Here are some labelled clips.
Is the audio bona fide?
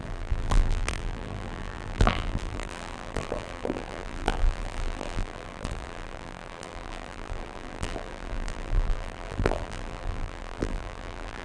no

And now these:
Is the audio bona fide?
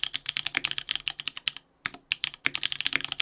yes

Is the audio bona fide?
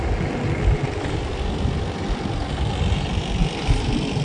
yes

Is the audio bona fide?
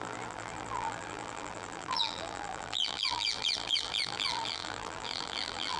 no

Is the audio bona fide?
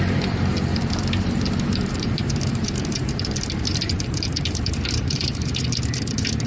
no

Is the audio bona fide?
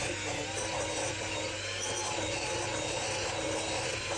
yes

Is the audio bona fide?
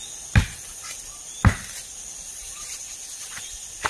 yes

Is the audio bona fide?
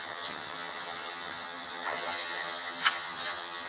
no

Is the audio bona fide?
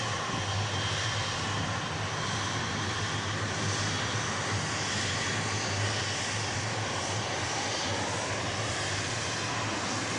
yes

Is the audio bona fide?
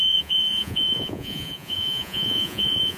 no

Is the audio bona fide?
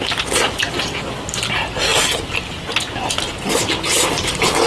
yes